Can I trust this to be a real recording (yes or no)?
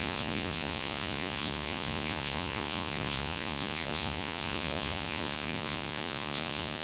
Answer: no